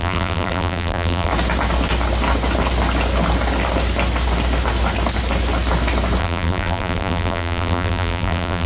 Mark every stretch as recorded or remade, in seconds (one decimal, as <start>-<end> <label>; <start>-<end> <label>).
0.0-1.3 remade; 1.3-6.2 recorded; 6.2-8.7 remade